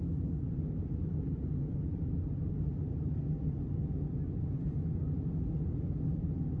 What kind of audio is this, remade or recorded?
recorded